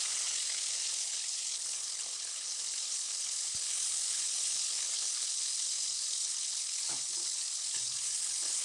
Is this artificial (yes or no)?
yes